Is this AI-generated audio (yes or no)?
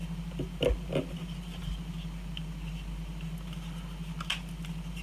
no